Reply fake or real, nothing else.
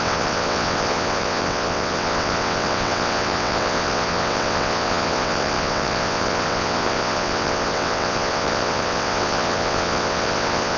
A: fake